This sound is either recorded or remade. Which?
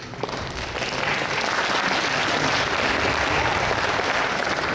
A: recorded